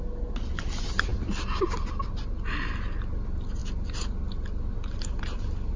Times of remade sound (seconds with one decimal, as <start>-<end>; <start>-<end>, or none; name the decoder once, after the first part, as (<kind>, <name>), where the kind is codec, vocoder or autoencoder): none